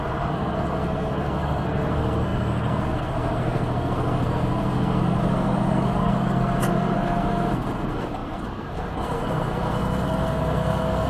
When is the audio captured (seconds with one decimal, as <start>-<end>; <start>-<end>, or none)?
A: none